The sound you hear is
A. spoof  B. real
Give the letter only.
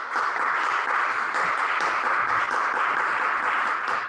B